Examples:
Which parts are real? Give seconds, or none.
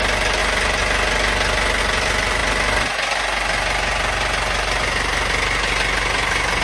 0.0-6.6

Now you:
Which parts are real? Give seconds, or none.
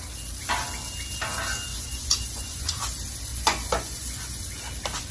0.0-1.7; 2.8-3.3; 4.4-5.1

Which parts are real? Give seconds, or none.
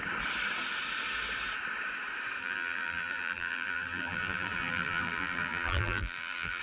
0.0-2.4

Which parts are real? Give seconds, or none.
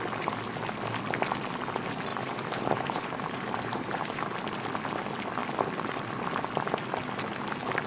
0.0-2.1; 4.2-7.9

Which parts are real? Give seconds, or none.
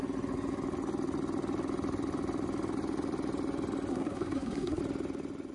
0.0-3.9; 4.8-5.5